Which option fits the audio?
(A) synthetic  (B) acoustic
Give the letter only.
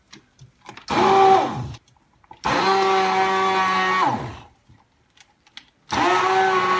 B